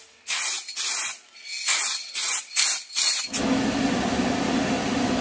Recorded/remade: recorded